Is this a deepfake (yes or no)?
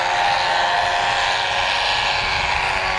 no